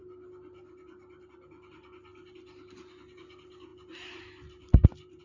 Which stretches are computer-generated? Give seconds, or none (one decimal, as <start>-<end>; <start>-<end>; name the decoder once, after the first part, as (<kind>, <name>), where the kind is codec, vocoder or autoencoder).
none

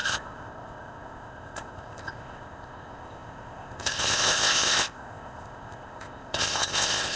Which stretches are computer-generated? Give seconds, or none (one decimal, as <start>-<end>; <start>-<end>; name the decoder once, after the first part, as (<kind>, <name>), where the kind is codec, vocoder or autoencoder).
0.0-7.2 (codec, ZipCodec)

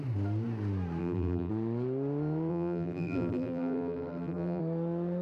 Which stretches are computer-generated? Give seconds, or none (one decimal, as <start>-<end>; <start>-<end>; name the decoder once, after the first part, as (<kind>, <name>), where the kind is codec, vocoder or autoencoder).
1.0-1.5 (vocoder, BigVGAN v2); 2.5-4.6

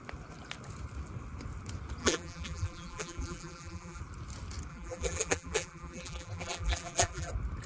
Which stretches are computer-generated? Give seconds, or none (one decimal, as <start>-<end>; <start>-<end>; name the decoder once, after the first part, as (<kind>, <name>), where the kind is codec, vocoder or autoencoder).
2.0-4.0 (vocoder, BigVGAN v2); 4.7-7.3

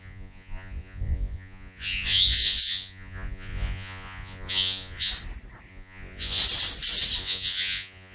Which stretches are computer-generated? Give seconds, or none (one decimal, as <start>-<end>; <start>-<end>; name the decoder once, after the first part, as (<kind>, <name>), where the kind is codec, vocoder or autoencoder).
0.0-5.1 (vocoder, Vocos); 5.7-6.4; 7.2-8.1